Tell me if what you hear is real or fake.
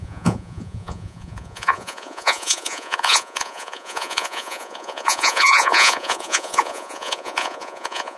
fake